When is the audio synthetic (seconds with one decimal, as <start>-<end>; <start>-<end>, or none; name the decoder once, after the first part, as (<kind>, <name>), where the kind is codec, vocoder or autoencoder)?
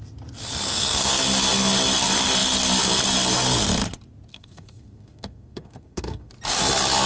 0.7-1.2 (codec, SNAC); 4.3-6.3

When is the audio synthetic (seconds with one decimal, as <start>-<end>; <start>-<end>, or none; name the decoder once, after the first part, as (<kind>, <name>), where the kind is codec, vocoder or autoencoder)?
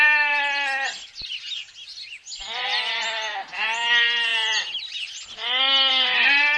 none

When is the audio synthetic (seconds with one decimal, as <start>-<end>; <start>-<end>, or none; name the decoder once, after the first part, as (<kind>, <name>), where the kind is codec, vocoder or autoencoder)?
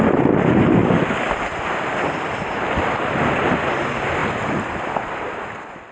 0.8-3.7 (vocoder, BigVGAN v2)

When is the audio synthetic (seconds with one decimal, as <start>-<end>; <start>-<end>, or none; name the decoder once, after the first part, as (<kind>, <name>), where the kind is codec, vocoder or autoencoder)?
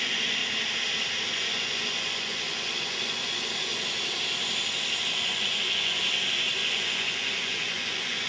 0.0-0.4 (vocoder, Vocos); 1.3-3.7; 5.0-6.0; 6.5-8.3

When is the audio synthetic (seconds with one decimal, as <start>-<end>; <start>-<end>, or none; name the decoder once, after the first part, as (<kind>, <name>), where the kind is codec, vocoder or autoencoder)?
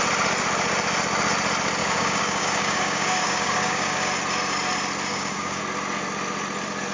1.8-4.1 (codec, DAC); 5.1-5.6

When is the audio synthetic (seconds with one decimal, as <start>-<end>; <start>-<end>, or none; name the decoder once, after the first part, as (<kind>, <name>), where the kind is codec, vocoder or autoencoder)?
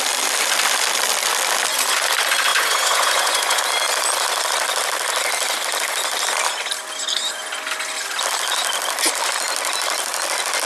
2.5-3.6 (vocoder, Vocos)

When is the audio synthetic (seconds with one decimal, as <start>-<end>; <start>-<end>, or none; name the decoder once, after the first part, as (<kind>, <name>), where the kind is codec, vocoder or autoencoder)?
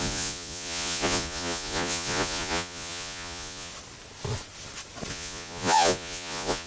0.0-3.7 (vocoder, Vocos); 5.1-6.7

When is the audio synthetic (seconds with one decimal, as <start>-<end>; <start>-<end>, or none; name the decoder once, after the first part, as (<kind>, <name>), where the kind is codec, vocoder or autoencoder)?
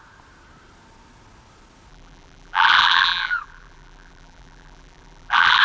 1.9-5.6 (vocoder, BigVGAN v2)